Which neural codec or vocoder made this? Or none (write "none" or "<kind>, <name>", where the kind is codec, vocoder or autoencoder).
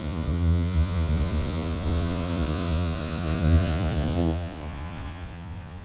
vocoder, Vocos